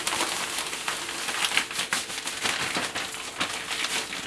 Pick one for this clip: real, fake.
real